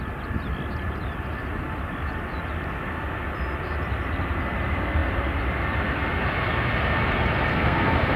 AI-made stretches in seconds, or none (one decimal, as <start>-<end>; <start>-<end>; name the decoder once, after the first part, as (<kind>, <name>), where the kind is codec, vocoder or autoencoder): 7.5-8.2 (codec, SNAC)